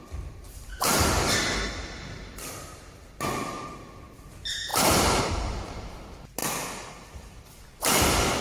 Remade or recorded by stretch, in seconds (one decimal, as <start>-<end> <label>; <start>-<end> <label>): 0.0-4.7 recorded; 4.7-5.2 remade; 5.2-8.4 recorded